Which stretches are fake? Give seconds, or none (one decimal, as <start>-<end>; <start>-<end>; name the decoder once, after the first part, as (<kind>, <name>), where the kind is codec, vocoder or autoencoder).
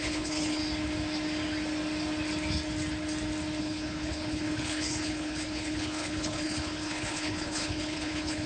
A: 0.0-0.6 (codec, HILCodec); 3.6-8.5